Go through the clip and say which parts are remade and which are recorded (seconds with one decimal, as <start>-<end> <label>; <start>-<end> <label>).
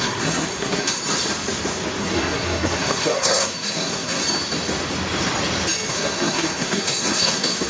0.0-1.0 remade; 1.0-2.0 recorded; 2.0-4.2 remade; 4.2-5.9 recorded; 5.9-7.7 remade